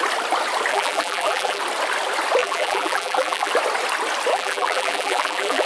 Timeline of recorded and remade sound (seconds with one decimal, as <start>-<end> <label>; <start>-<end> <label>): 0.0-0.7 recorded; 0.7-1.6 remade; 1.6-2.4 recorded; 2.4-3.5 remade; 3.5-4.3 recorded; 4.3-5.7 remade